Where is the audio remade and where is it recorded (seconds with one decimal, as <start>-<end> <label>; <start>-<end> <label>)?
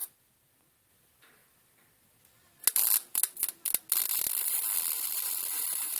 0.0-6.0 recorded